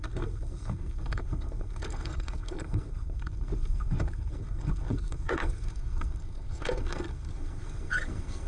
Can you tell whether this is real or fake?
fake